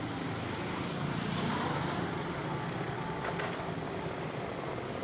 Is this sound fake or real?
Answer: real